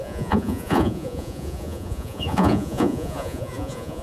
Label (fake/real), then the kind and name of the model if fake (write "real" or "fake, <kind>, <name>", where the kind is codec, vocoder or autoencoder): fake, vocoder, Vocos